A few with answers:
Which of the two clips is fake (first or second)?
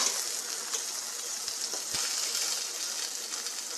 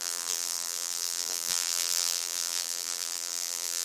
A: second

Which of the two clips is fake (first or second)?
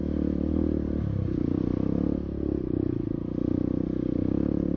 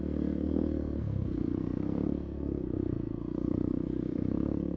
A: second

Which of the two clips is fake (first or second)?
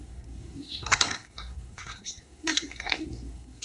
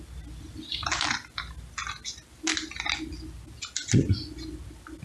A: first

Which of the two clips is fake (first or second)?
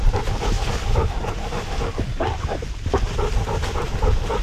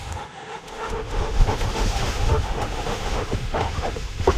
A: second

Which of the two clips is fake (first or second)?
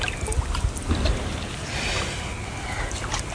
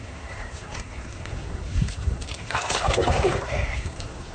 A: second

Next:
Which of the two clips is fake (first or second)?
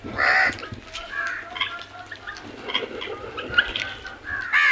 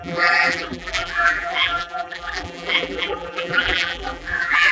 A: second